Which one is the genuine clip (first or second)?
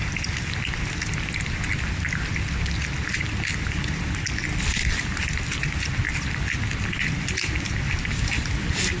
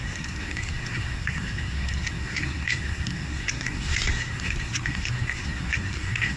first